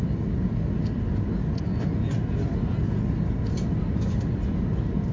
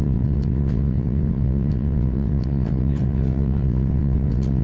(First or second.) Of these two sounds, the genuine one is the first